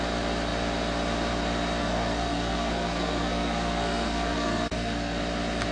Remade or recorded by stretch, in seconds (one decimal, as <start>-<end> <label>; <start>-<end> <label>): 0.0-1.8 recorded; 1.8-5.2 remade; 5.2-5.7 recorded